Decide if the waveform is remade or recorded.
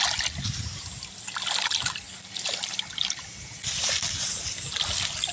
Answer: recorded